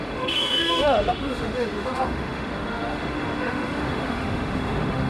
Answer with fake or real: fake